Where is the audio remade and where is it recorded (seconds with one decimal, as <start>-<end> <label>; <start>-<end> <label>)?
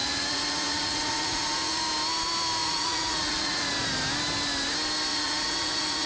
0.0-1.8 remade; 1.8-2.6 recorded; 2.6-3.7 remade; 3.7-5.1 recorded; 5.1-6.1 remade